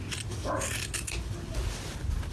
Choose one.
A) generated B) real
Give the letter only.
B